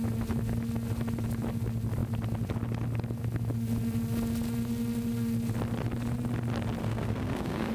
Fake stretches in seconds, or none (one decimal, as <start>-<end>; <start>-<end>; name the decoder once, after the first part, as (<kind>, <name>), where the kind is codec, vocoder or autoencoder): 6.8-7.7 (codec, SNAC)